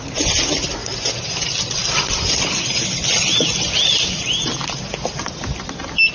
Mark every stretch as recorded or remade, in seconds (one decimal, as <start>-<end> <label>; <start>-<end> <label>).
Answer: 0.0-6.1 recorded